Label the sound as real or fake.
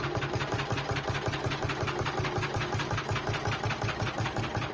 real